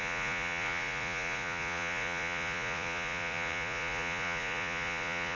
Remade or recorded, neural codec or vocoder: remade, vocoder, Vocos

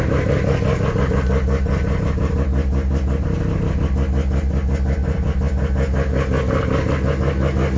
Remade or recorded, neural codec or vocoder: recorded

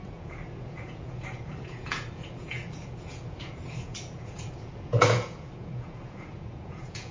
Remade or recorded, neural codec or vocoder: remade, vocoder, Vocos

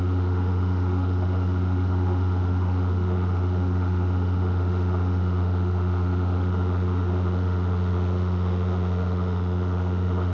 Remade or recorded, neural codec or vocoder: remade, autoencoder, DAC-VAE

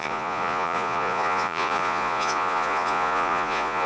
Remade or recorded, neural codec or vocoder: remade, vocoder, Vocos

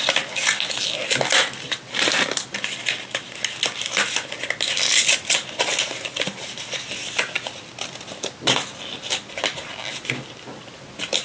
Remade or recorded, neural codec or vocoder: recorded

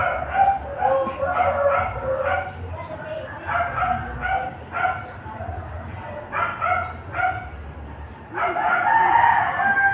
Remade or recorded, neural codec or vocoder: recorded